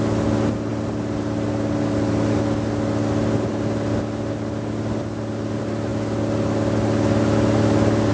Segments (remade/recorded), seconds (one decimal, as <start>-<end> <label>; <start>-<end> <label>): 0.0-8.1 recorded